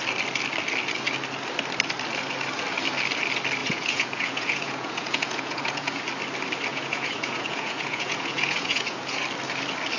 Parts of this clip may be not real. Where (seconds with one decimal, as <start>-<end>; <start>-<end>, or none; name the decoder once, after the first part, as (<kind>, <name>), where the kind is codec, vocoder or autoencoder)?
3.6-6.0 (vocoder, Vocos); 6.7-9.2